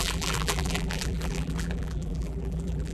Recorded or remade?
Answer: remade